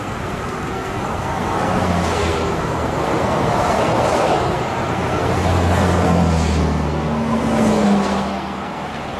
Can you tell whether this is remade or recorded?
remade